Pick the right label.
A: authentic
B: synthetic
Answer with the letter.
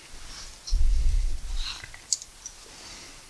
A